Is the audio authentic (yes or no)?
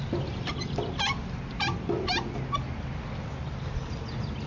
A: yes